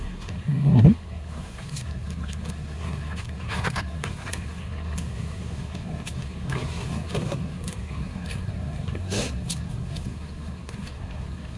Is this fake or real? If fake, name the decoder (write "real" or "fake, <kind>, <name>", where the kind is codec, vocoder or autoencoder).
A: fake, codec, SNAC